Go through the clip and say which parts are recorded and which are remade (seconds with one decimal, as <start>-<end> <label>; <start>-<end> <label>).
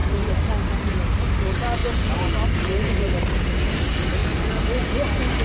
0.0-1.8 recorded; 1.8-3.4 remade; 3.4-5.4 recorded